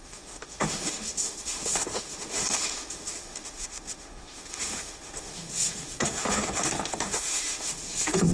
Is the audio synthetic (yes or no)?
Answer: yes